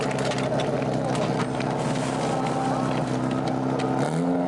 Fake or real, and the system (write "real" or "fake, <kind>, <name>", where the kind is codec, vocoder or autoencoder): real